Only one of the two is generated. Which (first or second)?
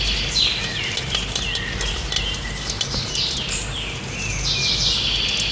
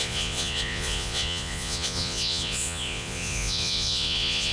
second